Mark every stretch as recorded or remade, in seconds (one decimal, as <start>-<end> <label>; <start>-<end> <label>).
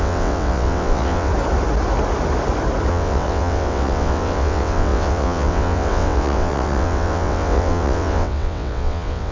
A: 0.0-1.3 remade; 1.3-2.9 recorded; 2.9-9.3 remade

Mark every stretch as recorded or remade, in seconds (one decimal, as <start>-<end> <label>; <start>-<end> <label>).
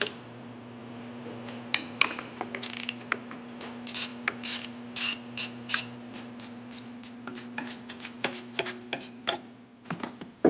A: 0.0-10.5 recorded